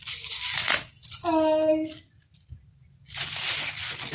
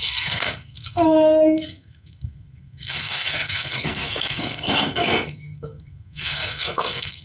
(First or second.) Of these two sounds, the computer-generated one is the second